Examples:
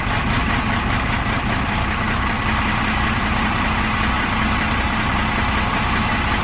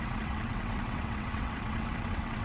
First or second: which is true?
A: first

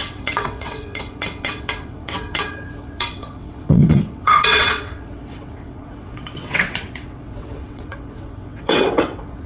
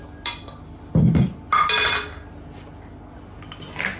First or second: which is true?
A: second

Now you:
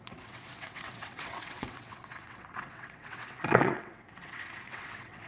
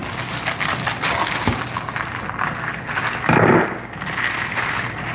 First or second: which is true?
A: second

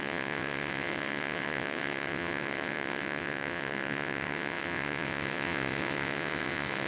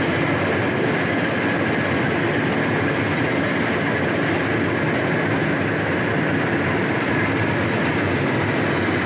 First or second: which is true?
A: second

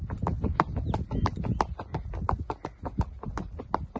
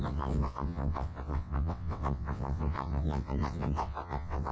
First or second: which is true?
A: first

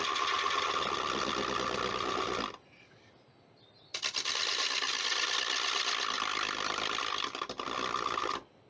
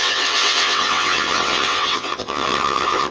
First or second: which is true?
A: first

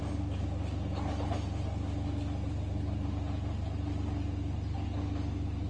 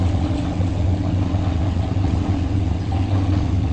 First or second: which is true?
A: first